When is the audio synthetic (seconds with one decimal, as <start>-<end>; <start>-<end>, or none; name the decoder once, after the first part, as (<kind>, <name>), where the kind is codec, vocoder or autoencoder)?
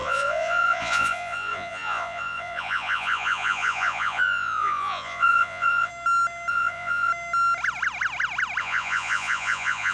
0.0-5.9 (vocoder, Vocos); 6.5-7.1; 8.6-9.9